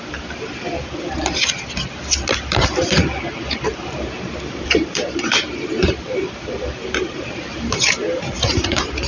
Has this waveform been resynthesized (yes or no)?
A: yes